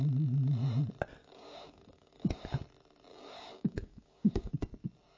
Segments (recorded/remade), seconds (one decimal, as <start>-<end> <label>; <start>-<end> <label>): 0.0-1.2 recorded; 1.2-2.5 remade; 2.5-3.1 recorded; 3.1-4.5 remade; 4.5-5.2 recorded